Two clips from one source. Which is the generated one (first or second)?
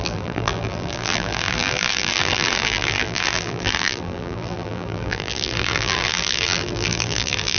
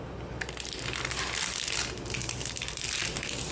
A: first